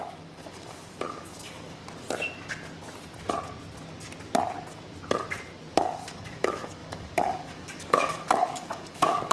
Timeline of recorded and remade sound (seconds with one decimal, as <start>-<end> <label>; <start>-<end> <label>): 0.0-1.8 remade; 1.8-5.7 recorded; 5.7-9.3 remade